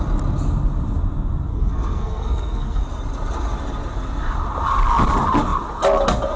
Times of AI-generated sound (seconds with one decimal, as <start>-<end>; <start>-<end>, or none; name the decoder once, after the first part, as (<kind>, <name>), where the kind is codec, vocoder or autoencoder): 1.5-2.8 (codec, SNAC)